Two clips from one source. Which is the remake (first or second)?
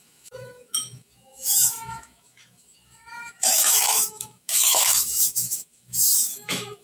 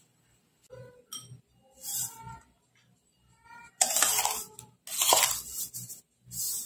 first